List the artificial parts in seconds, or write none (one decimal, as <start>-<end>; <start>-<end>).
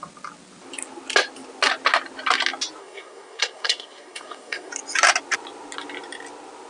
2.8-4.7